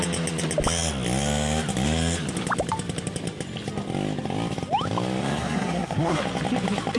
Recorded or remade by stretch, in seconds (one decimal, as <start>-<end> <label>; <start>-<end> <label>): 0.0-5.2 recorded; 5.2-6.2 remade; 6.2-7.0 recorded